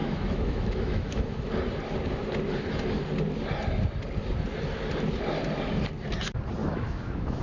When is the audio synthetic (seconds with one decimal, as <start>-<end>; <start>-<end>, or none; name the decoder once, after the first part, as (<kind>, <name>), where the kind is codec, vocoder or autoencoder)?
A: 0.0-1.4 (autoencoder, DAC-VAE); 6.6-7.4